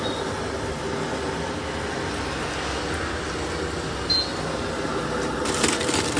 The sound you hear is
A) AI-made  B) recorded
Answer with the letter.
B